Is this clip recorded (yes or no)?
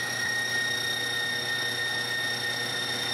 yes